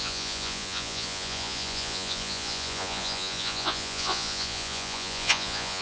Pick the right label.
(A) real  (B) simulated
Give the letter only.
B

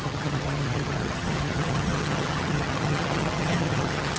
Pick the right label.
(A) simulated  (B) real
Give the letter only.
A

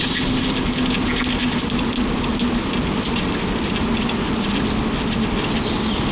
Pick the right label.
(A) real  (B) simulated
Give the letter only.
A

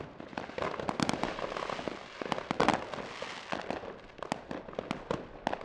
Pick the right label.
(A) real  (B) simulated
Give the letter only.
A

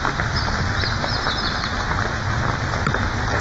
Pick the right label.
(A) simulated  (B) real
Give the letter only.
B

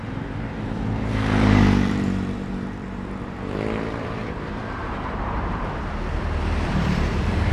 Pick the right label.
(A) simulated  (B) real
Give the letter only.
A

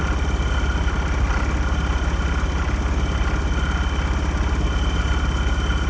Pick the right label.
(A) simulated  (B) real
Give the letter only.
B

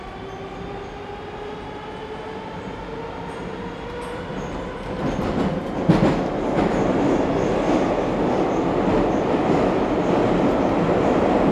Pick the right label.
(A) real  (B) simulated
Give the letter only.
A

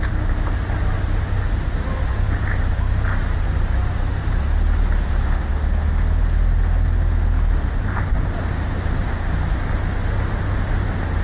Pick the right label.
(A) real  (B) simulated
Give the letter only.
A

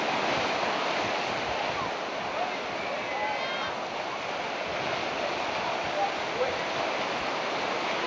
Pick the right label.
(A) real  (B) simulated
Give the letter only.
A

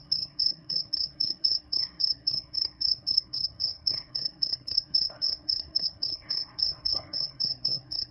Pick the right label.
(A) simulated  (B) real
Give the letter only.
A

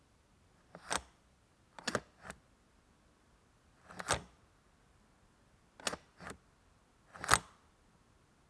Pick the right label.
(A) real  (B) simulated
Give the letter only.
A